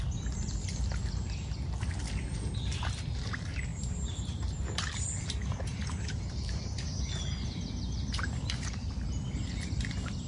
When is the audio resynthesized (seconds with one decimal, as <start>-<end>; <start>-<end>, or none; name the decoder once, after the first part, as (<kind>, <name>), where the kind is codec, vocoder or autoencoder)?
3.7-6.7 (vocoder, BigVGAN v2)